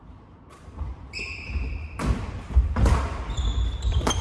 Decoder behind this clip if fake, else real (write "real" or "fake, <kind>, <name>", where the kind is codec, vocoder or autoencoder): fake, vocoder, BigVGAN v2